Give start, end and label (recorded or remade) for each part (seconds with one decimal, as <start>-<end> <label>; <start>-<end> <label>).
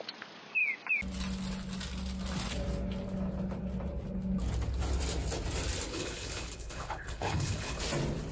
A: 0.0-5.9 recorded; 5.9-7.8 remade; 7.8-8.3 recorded